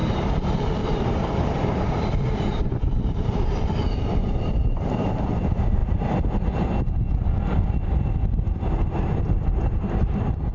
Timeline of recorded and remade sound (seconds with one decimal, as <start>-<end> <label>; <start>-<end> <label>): 0.0-5.8 remade; 5.8-9.2 recorded; 9.2-10.5 remade